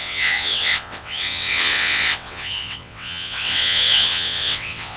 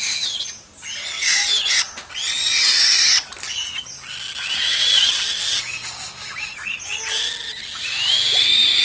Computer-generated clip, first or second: first